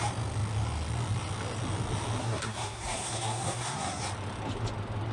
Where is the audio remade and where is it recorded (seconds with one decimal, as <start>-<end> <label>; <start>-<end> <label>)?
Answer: 0.0-2.2 recorded; 2.2-4.0 remade; 4.0-5.1 recorded